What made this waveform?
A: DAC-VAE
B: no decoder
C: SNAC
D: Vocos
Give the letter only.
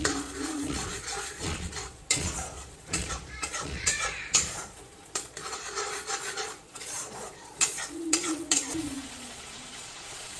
D